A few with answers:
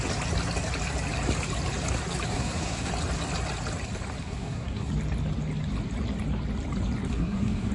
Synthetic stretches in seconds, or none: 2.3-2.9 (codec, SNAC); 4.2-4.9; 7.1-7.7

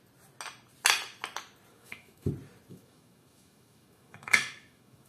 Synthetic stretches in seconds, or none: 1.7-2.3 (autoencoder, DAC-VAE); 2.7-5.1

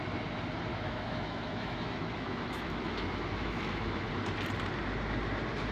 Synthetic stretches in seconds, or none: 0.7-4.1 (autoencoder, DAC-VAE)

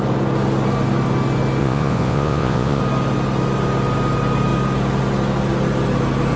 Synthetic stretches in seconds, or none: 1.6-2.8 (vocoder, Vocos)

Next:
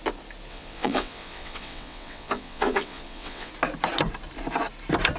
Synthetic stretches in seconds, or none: 0.5-3.5 (vocoder, WaveNeXt)

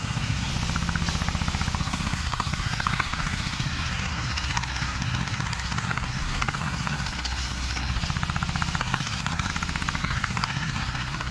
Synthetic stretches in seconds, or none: 0.0-0.5 (codec, SNAC); 1.8-8.0; 8.8-9.5; 10.0-11.3

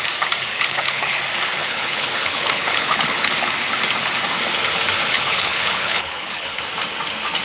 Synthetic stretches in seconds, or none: 0.5-1.2 (codec, HILCodec); 1.6-3.3; 5.0-6.6